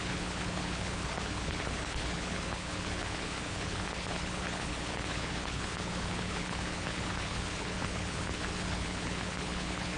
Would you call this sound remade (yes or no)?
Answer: yes